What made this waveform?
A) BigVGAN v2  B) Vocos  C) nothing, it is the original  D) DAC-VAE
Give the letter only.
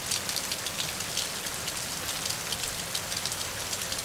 C